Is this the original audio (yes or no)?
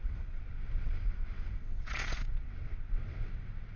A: no